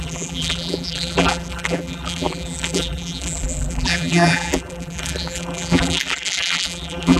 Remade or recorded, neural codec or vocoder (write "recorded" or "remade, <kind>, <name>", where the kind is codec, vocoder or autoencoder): remade, vocoder, BigVGAN v2